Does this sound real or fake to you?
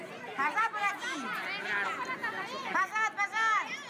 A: real